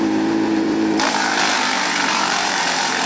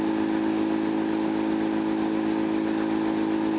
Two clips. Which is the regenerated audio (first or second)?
first